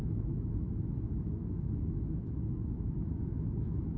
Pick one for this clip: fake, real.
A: fake